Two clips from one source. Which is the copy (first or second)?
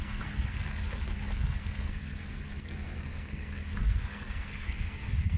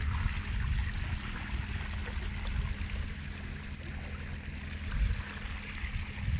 first